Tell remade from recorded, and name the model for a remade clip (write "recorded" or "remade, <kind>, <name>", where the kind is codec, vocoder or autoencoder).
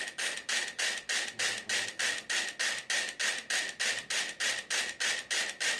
recorded